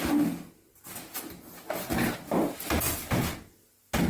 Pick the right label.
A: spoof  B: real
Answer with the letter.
B